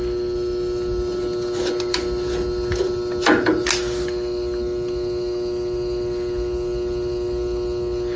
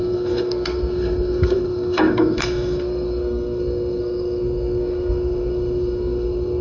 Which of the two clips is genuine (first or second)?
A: first